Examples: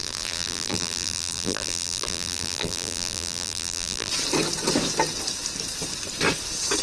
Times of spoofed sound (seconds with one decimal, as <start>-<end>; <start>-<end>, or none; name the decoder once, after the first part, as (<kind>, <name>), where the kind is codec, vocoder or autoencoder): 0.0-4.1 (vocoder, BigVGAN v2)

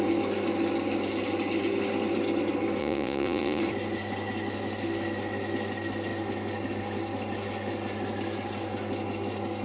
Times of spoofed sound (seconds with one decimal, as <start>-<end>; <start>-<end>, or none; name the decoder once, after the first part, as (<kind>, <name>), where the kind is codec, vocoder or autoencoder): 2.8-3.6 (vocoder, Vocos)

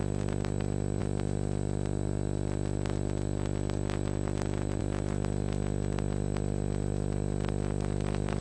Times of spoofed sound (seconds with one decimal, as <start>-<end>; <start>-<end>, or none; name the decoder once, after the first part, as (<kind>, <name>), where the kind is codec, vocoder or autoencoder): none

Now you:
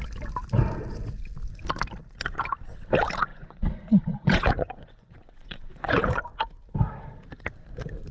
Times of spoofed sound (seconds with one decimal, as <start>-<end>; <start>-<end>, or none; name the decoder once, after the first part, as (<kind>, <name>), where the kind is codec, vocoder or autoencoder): 3.3-6.2 (vocoder, Vocos)

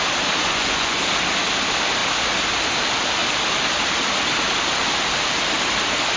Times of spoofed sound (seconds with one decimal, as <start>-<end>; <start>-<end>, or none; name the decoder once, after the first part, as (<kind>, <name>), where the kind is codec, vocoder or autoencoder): 0.4-1.0 (vocoder, Vocos)

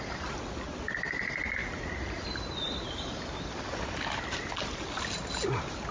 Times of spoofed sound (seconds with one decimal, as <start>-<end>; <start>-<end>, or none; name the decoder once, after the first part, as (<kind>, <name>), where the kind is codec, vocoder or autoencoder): none